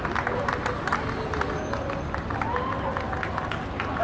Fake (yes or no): no